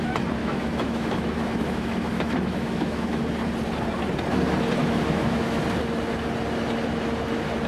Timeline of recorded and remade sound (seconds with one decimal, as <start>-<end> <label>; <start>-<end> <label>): 0.0-0.4 recorded; 0.4-3.2 remade; 3.2-4.8 recorded; 4.8-5.6 remade; 5.6-7.7 recorded